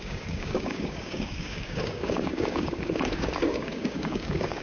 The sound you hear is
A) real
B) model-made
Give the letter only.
B